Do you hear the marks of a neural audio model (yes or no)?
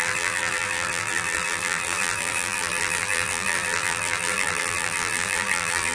yes